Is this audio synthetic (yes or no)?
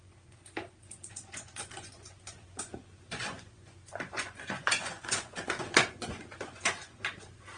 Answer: yes